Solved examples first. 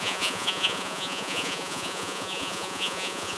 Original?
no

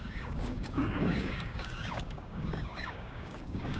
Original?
no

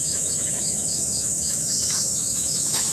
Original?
no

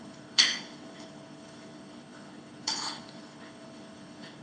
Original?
no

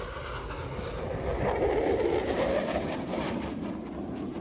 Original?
yes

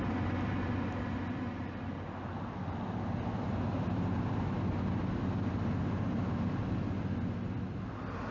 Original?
yes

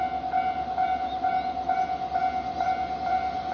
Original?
yes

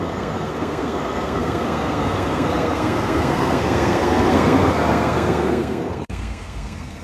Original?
no